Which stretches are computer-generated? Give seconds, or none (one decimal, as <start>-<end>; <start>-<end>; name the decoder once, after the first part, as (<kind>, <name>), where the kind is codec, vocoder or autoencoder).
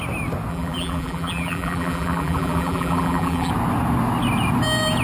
0.5-3.5 (vocoder, BigVGAN v2)